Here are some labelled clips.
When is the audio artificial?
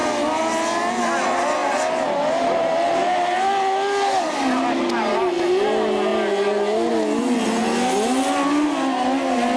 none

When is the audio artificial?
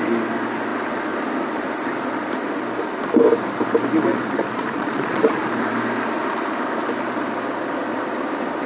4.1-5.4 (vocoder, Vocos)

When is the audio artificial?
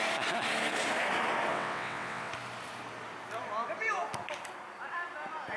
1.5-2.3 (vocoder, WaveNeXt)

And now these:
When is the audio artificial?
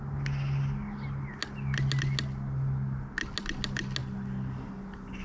none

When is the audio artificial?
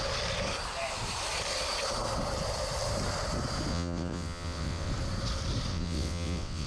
3.7-4.9 (vocoder, WaveNeXt); 5.7-6.7